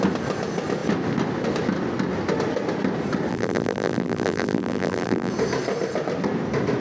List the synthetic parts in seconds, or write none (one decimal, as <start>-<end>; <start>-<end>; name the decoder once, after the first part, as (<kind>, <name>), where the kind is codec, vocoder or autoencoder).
3.3-5.3 (vocoder, BigVGAN v2)